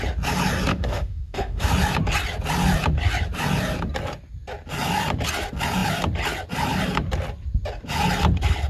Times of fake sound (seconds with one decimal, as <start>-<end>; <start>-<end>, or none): 0.7-1.7